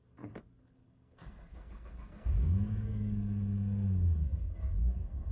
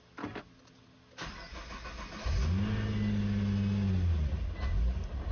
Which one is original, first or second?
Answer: second